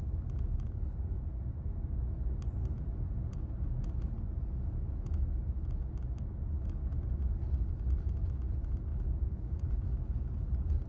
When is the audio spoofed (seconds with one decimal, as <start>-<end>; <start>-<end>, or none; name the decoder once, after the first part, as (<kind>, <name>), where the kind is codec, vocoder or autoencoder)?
2.9-5.1 (vocoder, Vocos); 8.9-10.4

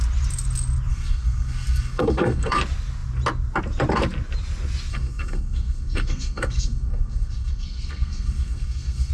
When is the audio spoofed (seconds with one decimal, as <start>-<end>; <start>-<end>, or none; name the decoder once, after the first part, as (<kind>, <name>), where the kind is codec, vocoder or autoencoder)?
0.9-2.6 (codec, SNAC); 4.9-9.1

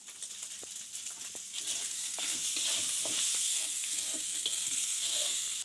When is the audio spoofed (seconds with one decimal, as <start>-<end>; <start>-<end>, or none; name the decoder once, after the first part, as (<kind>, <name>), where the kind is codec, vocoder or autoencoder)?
1.8-2.4 (codec, SNAC); 3.3-5.6

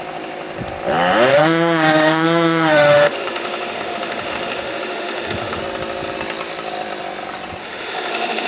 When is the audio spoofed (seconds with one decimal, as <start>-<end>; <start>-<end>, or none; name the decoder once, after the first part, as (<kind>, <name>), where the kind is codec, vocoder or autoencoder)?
1.3-5.6 (autoencoder, DAC-VAE); 7.6-8.5

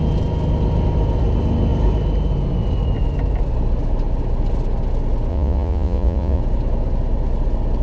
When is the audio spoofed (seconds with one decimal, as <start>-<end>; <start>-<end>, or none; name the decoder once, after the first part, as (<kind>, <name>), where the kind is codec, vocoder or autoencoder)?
5.3-6.4 (vocoder, Vocos)

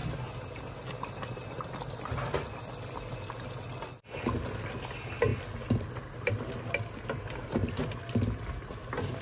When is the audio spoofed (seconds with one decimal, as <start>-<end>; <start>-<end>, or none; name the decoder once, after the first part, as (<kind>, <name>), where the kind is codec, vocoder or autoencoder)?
none